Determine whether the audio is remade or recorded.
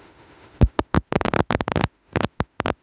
remade